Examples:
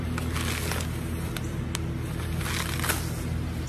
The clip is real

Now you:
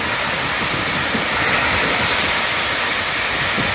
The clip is real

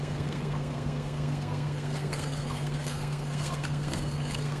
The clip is fake